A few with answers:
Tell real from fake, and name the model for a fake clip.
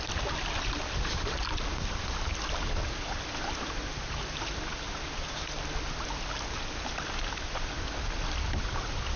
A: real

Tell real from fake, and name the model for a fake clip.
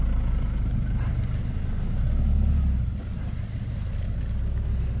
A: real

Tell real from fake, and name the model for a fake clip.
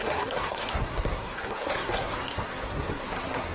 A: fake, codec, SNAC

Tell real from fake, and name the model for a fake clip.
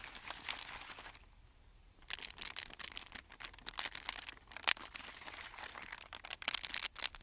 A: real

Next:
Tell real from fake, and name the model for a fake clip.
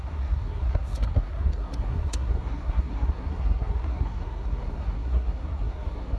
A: fake, codec, SNAC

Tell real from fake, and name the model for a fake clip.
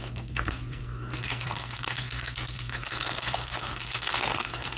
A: fake, codec, SNAC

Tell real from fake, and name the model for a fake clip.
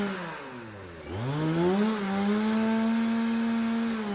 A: real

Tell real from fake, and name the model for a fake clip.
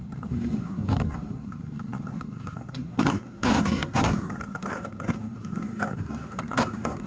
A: fake, codec, SNAC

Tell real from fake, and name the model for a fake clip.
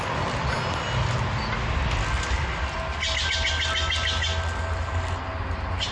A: real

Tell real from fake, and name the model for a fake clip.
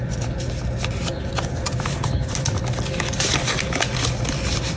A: real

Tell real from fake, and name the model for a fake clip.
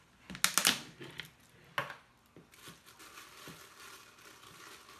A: real